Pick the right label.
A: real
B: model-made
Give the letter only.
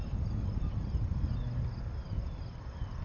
A